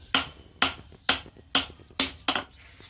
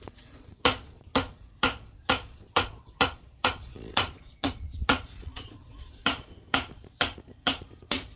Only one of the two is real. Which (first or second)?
first